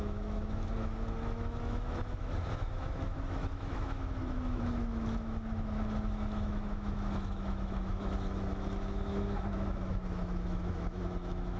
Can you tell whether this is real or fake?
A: fake